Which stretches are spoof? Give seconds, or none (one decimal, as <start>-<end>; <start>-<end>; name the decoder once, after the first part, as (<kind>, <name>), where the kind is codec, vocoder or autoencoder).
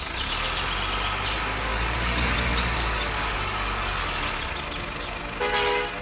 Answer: 1.7-4.2 (codec, DAC)